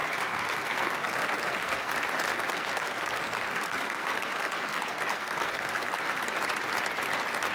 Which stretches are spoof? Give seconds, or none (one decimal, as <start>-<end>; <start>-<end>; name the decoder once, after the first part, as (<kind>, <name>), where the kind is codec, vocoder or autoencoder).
0.0-1.9 (codec, SNAC); 2.3-6.3